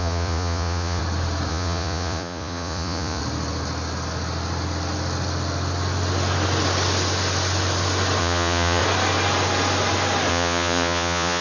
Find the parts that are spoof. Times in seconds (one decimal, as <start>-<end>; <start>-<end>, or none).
0.0-1.0; 1.5-3.2; 8.2-8.8; 10.3-11.4